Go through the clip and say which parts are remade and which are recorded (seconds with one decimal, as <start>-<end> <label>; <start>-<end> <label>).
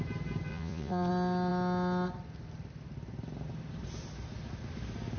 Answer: 0.0-0.5 recorded; 0.5-1.1 remade; 1.1-5.2 recorded